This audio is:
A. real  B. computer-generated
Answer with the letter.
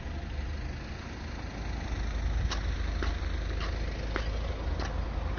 A